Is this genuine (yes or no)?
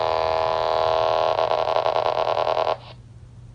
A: yes